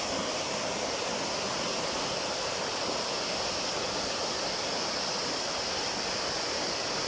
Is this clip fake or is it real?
real